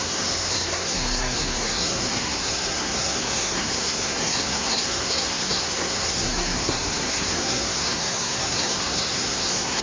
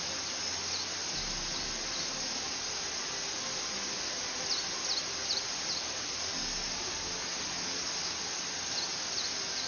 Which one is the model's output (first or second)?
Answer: first